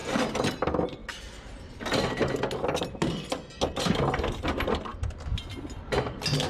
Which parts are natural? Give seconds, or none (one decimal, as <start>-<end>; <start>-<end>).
0.0-6.5